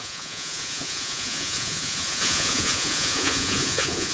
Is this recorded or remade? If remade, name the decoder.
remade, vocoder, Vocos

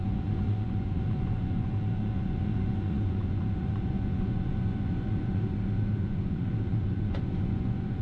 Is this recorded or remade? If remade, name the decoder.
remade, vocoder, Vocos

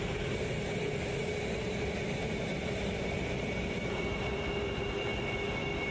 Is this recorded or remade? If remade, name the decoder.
recorded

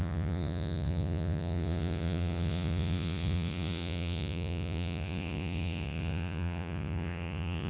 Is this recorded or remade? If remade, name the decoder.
remade, vocoder, Vocos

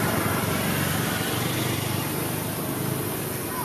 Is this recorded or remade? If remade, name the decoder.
recorded